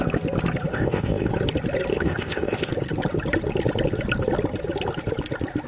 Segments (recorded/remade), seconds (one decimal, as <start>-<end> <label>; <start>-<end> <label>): 0.0-0.7 recorded; 0.7-1.3 remade; 1.3-1.9 recorded; 1.9-2.7 remade; 2.7-5.7 recorded